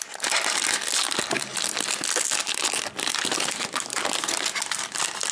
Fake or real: real